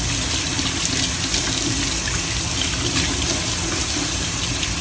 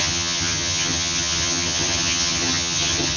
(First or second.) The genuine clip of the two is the first